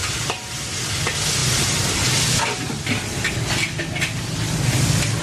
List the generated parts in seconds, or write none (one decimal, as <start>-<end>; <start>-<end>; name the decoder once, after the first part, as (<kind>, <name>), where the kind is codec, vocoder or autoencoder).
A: none